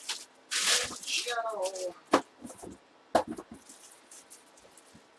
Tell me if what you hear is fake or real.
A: real